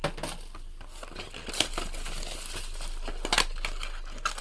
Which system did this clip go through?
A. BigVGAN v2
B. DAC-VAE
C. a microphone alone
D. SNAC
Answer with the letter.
C